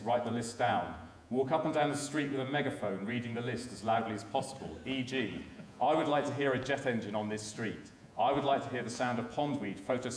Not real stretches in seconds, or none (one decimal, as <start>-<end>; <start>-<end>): 0.0-4.0; 5.5-6.6; 7.5-10.2